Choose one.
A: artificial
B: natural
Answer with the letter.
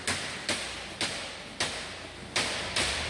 B